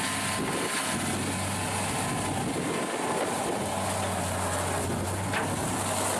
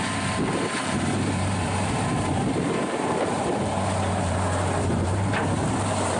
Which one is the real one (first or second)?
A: first